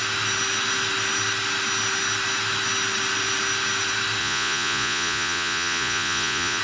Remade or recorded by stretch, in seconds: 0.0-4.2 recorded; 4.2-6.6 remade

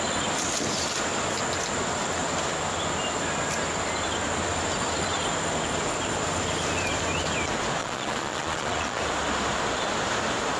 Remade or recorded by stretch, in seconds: 0.0-7.8 recorded; 7.8-9.0 remade; 9.0-10.6 recorded

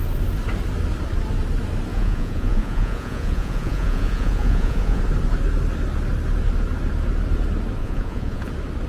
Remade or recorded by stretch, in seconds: 0.0-1.9 recorded; 1.9-5.0 remade; 5.0-7.8 recorded; 7.8-8.5 remade; 8.5-8.9 recorded

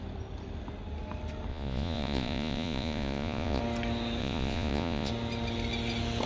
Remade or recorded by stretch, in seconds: 0.0-1.5 recorded; 1.5-3.6 remade; 3.6-4.2 recorded; 4.2-5.1 remade; 5.1-6.3 recorded

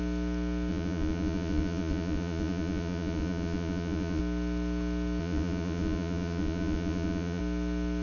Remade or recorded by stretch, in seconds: 0.0-0.7 recorded; 0.7-4.2 remade; 4.2-5.2 recorded; 5.2-7.4 remade; 7.4-8.0 recorded